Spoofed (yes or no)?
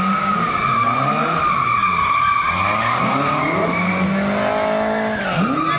no